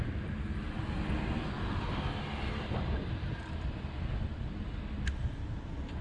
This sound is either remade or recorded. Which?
recorded